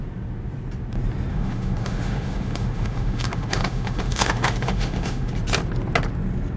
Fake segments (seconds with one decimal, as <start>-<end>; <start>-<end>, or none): 1.3-5.3